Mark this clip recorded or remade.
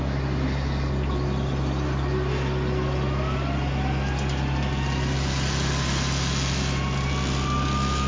recorded